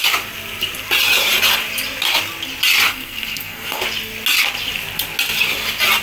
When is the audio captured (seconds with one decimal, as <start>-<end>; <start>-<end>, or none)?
0.0-2.9; 3.8-6.0